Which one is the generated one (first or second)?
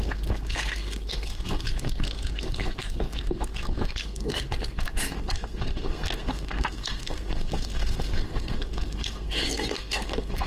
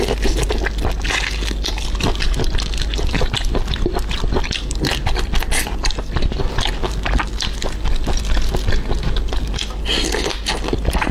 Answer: first